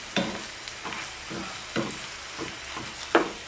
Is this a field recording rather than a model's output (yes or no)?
yes